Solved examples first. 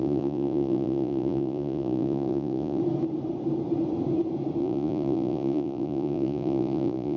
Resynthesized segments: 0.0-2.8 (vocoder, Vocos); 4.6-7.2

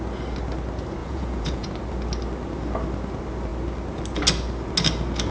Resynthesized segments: 1.0-1.7 (vocoder, Vocos)

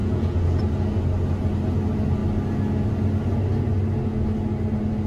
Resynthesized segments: 0.0-0.6 (vocoder, Vocos)

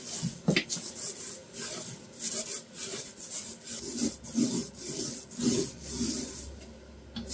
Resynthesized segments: none

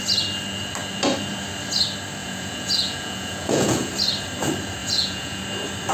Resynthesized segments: 2.2-3.9 (vocoder, Vocos); 4.8-5.4

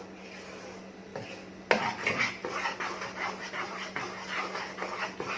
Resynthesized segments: none

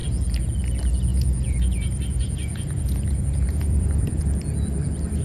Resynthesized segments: 1.1-4.2 (vocoder, Vocos)

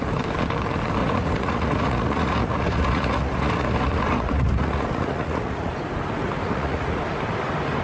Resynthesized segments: 1.0-5.7 (vocoder, Vocos); 6.4-7.0